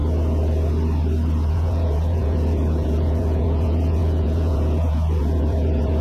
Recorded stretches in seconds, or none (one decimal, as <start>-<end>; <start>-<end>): 0.0-1.5